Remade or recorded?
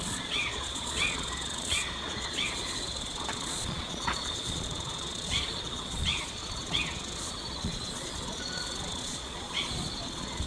remade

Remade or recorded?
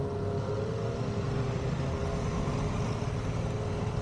recorded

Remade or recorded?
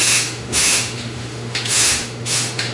remade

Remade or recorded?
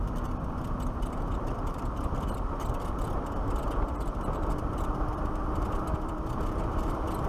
remade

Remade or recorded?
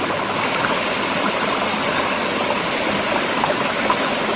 recorded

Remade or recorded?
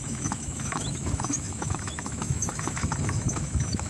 remade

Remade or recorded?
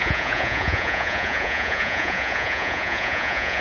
remade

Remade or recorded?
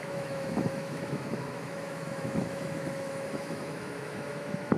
remade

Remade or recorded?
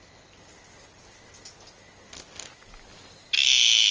recorded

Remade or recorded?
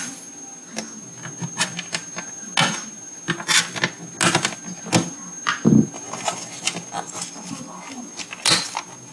recorded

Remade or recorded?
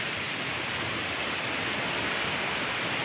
recorded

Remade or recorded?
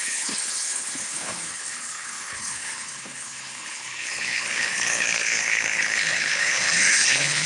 remade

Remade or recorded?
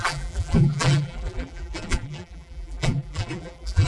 remade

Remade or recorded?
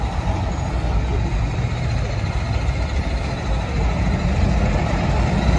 recorded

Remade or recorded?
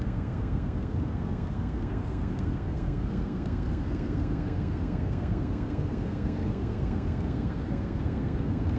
remade